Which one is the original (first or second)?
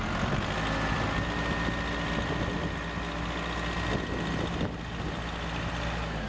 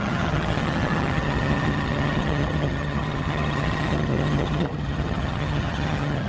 first